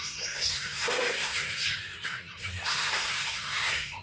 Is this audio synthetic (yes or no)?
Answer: yes